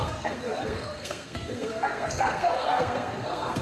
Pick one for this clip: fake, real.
fake